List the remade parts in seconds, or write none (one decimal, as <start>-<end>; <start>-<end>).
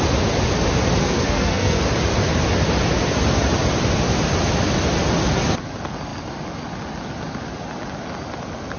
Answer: 1.0-1.8